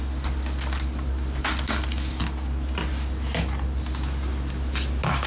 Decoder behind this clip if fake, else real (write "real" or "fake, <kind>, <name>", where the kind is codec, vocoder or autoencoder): real